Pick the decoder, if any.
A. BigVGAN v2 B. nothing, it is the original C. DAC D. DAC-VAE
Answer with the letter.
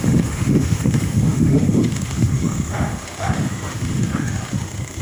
D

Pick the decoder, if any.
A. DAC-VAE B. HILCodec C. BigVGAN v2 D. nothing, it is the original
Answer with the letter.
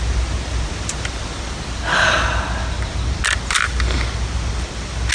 D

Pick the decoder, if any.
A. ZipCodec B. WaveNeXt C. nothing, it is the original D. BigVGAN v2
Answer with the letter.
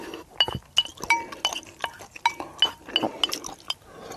C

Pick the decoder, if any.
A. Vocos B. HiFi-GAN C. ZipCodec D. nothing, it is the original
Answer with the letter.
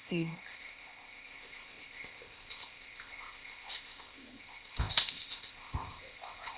C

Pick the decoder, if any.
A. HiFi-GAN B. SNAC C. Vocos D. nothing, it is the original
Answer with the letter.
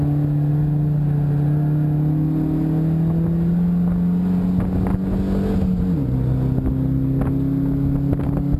D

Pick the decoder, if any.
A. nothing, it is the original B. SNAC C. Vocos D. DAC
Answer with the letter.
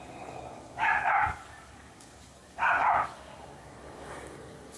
D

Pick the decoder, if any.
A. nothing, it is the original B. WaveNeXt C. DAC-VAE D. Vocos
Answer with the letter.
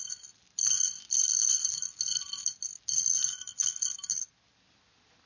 A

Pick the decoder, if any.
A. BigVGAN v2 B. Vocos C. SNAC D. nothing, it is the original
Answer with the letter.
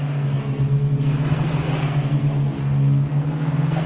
C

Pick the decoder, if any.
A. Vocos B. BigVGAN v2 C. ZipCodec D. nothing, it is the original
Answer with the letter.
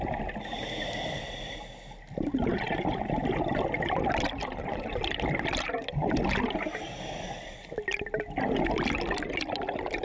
D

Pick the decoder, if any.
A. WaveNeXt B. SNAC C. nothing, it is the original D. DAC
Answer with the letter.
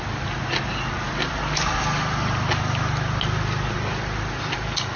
C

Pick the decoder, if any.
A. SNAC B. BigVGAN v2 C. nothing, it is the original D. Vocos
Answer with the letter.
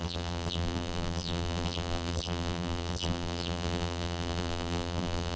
B